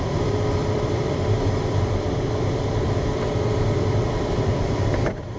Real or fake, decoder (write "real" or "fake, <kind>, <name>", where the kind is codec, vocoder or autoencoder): fake, vocoder, BigVGAN v2